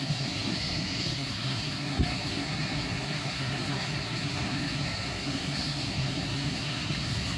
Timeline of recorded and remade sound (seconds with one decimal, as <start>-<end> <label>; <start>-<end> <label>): 0.0-7.4 remade